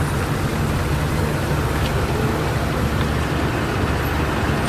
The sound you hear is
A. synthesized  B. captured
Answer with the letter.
B